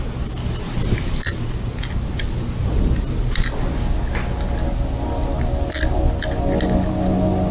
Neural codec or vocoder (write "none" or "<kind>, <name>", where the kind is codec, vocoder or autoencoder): none